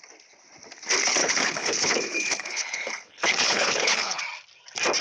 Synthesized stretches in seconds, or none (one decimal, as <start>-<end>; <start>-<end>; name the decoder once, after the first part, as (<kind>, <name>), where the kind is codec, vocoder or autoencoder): 1.2-4.2 (codec, HILCodec)